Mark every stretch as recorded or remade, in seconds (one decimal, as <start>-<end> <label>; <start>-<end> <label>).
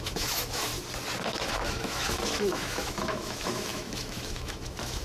0.0-0.7 remade; 0.7-1.3 recorded; 1.3-5.0 remade